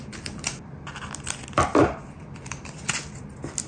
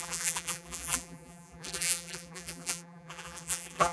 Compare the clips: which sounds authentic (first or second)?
first